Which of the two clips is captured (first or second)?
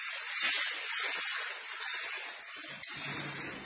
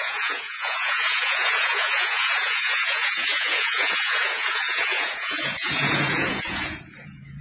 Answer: first